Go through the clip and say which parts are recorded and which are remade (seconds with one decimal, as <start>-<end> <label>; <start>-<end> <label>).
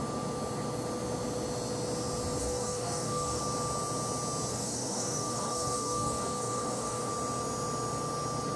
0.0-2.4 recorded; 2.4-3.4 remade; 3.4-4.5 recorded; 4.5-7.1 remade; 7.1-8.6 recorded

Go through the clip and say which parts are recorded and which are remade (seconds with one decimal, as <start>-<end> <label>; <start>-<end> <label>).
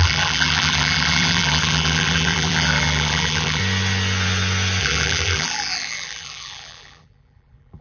0.0-3.6 remade; 3.6-4.8 recorded; 4.8-7.8 remade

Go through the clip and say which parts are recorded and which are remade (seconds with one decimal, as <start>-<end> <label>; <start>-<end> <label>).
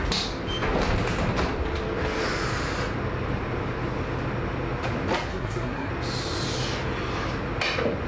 0.0-5.3 recorded; 5.3-5.9 remade; 5.9-8.1 recorded